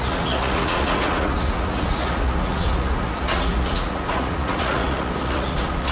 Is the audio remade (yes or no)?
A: yes